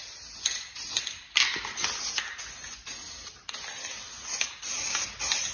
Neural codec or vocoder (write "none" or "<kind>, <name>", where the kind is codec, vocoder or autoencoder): none